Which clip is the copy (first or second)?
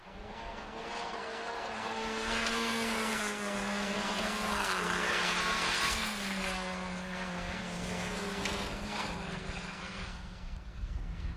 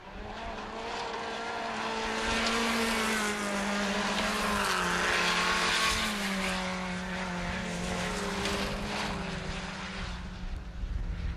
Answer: first